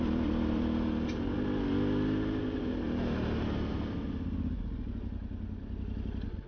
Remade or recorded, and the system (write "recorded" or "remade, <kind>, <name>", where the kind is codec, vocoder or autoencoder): recorded